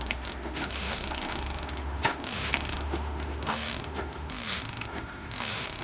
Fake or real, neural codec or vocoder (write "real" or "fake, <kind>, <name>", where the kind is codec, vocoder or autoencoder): fake, autoencoder, DAC-VAE